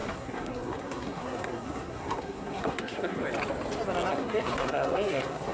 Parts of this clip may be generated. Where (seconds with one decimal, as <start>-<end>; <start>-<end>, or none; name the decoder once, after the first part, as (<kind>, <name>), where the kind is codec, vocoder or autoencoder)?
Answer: 0.0-3.2 (codec, SNAC); 4.1-5.5